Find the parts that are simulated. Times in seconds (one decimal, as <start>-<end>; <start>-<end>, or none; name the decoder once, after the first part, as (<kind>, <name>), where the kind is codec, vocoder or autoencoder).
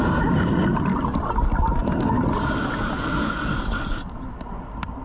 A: none